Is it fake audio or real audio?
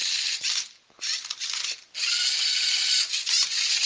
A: real